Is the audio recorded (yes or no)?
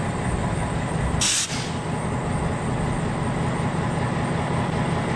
yes